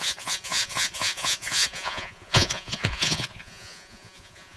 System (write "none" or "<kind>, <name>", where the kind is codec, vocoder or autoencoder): vocoder, Vocos